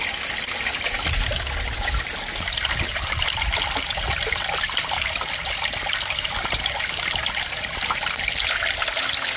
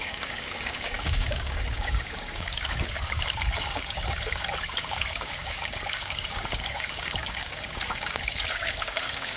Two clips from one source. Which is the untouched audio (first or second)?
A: first